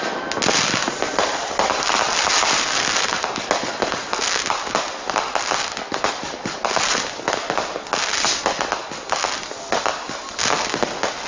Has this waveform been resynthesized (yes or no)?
no